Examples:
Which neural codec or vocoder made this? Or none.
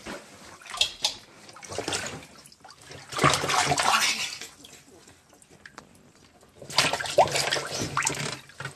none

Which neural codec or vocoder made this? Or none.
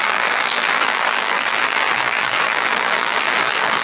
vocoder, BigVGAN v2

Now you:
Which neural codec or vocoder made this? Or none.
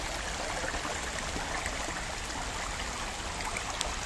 none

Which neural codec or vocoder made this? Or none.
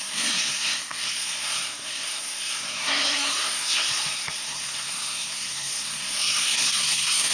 codec, SNAC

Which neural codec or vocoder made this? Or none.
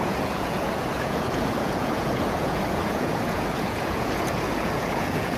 vocoder, Vocos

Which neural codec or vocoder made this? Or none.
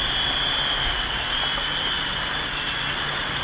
none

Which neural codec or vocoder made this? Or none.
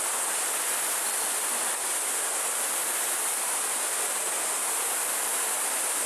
none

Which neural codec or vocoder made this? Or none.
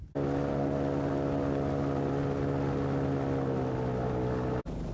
none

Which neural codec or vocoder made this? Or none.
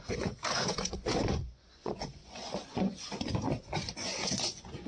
vocoder, Vocos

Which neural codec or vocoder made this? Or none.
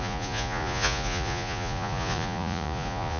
vocoder, Vocos